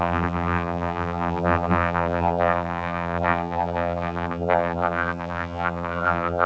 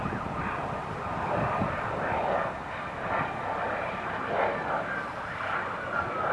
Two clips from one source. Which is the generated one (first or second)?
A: first